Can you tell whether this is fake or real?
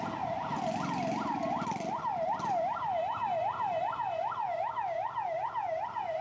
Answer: real